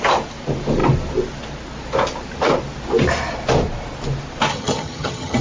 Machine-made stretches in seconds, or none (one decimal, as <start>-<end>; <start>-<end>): 4.5-5.4